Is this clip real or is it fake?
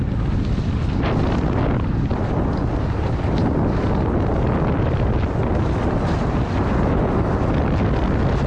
real